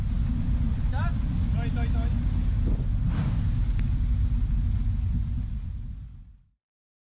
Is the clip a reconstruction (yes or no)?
no